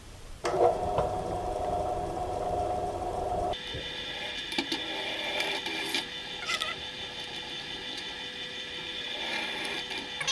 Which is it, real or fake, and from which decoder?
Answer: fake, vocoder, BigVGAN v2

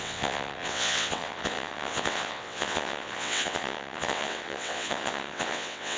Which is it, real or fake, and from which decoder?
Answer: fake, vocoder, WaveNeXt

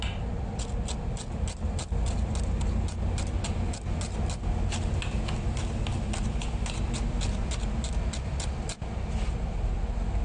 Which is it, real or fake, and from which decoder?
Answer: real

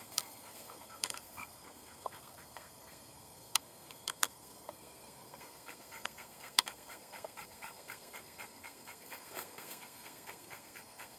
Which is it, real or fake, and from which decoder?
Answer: fake, codec, SNAC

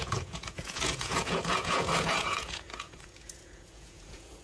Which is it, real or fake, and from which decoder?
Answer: fake, vocoder, Vocos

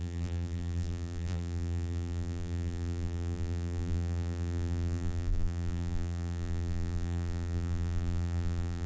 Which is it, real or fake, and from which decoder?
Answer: fake, vocoder, BigVGAN v2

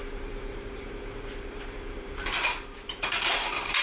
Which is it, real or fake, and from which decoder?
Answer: fake, vocoder, BigVGAN v2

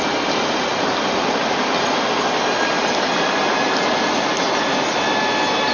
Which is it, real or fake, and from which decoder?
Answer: real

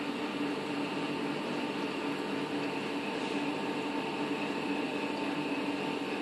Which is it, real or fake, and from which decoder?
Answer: real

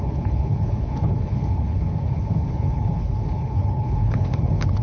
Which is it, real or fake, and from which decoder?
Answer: fake, codec, HILCodec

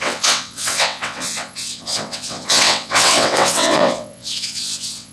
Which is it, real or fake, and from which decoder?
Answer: fake, vocoder, WaveNeXt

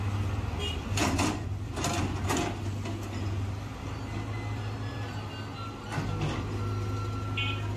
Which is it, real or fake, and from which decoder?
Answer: real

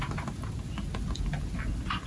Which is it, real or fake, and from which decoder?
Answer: real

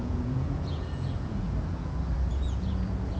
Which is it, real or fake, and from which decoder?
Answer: fake, vocoder, Vocos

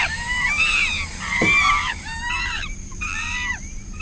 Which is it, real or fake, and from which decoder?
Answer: fake, vocoder, BigVGAN v2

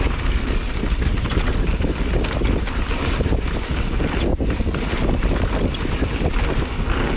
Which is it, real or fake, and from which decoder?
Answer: real